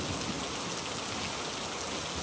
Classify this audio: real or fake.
real